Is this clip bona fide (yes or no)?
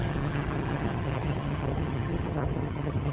no